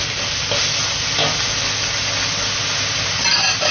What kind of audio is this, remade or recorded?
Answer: recorded